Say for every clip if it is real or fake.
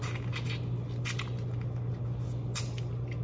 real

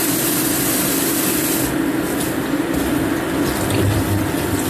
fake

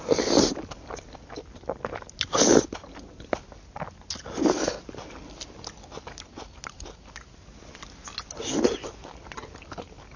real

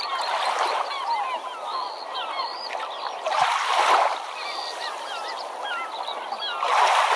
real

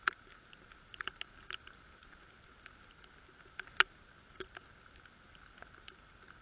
real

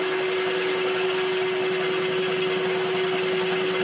real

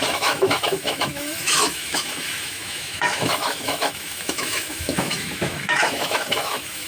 fake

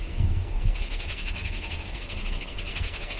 fake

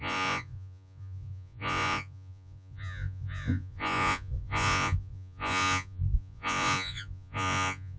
fake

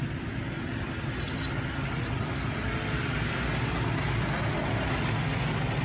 real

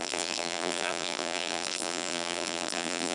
fake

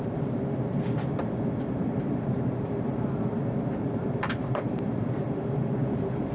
fake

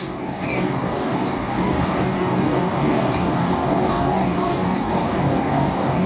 fake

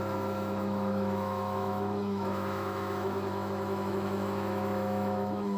fake